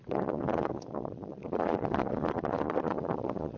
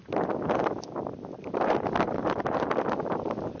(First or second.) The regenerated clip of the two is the first